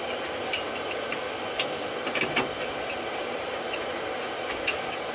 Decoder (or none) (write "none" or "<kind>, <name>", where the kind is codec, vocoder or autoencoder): none